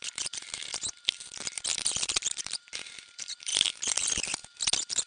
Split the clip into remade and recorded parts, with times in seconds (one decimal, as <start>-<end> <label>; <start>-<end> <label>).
0.0-5.1 remade